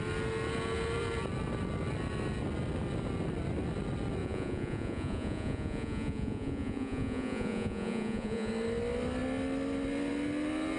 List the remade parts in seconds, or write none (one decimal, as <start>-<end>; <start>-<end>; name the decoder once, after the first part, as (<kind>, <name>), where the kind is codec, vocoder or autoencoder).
4.2-8.5 (vocoder, Vocos)